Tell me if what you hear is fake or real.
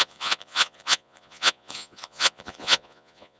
fake